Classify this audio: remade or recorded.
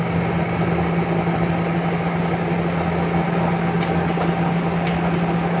recorded